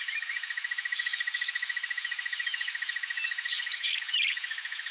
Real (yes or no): no